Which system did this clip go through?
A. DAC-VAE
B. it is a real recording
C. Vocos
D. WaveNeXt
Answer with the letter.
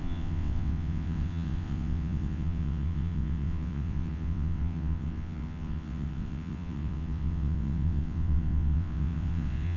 D